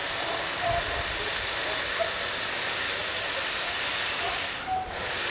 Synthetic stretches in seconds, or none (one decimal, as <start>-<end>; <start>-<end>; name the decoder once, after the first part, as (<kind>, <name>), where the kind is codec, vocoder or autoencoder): none